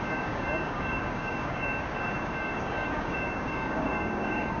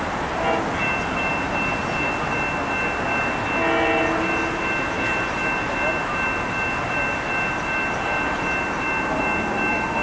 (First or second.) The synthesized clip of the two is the first